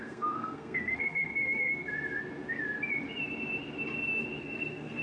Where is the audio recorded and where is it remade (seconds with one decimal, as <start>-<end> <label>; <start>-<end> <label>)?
0.0-1.9 remade; 1.9-4.4 recorded; 4.4-5.0 remade